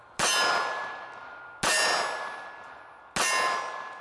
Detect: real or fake real